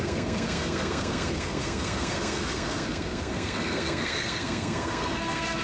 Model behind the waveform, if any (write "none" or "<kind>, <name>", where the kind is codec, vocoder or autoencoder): codec, SNAC